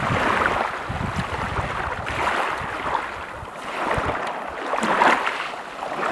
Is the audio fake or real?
real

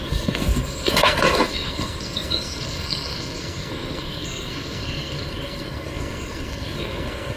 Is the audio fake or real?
fake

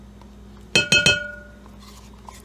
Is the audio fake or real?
real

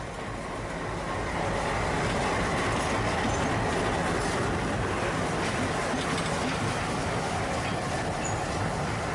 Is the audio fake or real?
real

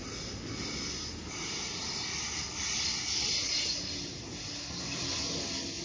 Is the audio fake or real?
real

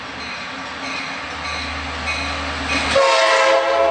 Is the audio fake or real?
real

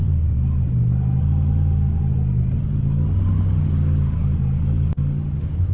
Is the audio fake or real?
real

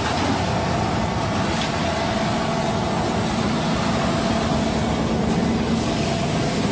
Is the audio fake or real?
real